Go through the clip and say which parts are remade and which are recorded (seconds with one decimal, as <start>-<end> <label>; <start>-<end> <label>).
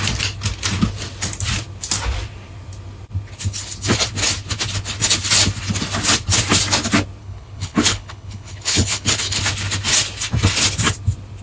0.0-7.2 recorded; 7.2-9.4 remade; 9.4-11.4 recorded